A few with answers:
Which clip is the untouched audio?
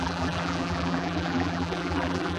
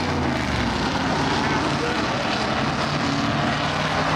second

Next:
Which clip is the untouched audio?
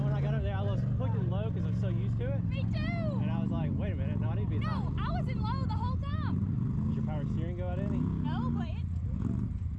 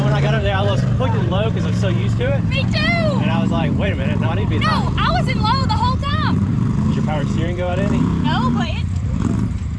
first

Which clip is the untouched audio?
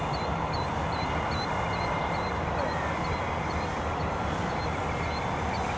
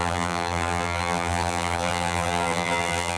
first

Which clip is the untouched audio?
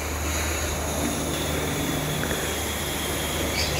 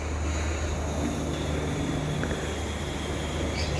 second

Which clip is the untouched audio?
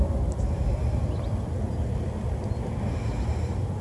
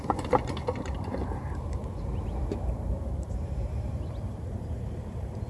first